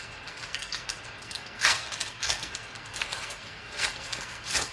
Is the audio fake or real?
fake